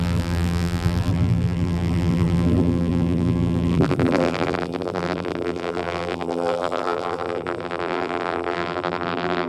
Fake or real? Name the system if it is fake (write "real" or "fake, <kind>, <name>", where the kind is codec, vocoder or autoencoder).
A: fake, vocoder, BigVGAN v2